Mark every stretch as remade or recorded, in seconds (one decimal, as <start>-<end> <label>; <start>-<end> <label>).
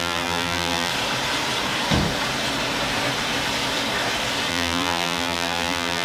0.0-0.9 remade; 0.9-4.5 recorded; 4.5-6.0 remade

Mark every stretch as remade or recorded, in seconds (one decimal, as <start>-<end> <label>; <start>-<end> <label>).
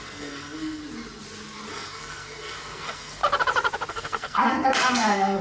0.0-0.8 remade; 0.8-1.7 recorded; 1.7-3.2 remade; 3.2-3.9 recorded; 3.9-5.4 remade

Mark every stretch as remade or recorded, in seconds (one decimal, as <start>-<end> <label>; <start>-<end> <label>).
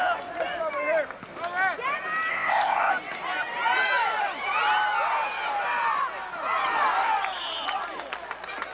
0.0-2.3 recorded; 2.3-2.9 remade; 2.9-8.7 recorded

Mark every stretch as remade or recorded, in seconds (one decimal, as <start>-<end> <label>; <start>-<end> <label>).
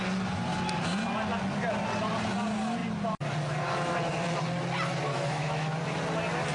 0.0-5.1 recorded; 5.1-5.8 remade; 5.8-6.5 recorded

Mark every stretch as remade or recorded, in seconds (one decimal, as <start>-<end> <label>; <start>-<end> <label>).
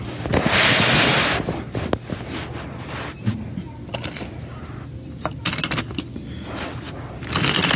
0.0-7.8 recorded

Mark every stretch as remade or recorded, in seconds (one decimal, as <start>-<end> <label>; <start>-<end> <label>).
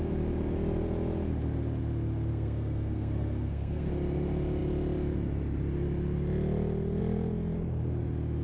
0.0-2.3 recorded; 2.3-3.9 remade; 3.9-8.4 recorded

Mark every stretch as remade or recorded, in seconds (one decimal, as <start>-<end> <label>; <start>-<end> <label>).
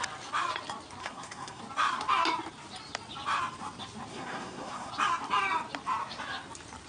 0.0-1.0 recorded; 1.0-1.6 remade; 1.6-4.1 recorded; 4.1-4.9 remade; 4.9-6.9 recorded